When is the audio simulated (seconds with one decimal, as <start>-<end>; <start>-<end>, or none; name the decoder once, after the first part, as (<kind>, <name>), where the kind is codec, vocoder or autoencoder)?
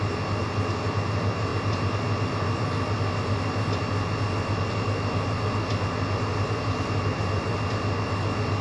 6.3-7.7 (vocoder, BigVGAN v2)